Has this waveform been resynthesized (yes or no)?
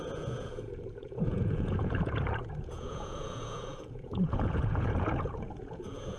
yes